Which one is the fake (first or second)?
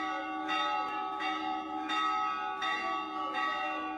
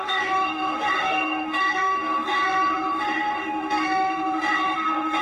second